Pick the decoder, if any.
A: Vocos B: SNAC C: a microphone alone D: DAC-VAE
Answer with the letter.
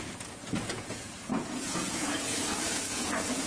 A